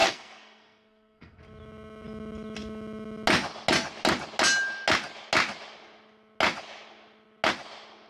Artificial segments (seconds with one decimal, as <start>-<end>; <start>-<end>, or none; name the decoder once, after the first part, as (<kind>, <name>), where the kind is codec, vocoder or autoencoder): 0.0-1.4 (codec, SNAC)

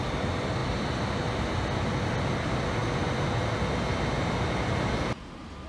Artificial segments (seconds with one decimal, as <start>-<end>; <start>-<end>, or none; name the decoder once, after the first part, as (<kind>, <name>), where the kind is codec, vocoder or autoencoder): none